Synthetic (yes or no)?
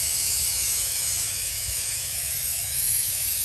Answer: yes